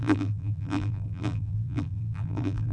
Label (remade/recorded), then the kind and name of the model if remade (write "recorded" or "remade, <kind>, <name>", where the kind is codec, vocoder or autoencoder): remade, vocoder, BigVGAN v2